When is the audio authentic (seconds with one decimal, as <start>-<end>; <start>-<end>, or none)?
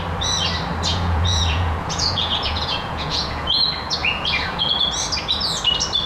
0.0-0.9; 3.6-4.0; 4.7-6.1